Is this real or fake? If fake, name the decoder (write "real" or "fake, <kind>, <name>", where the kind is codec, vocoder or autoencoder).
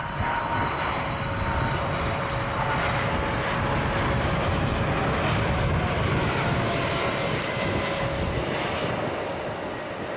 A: real